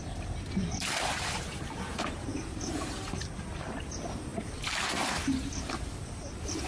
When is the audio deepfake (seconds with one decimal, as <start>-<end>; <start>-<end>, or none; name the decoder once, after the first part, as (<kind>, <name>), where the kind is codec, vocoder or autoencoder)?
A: none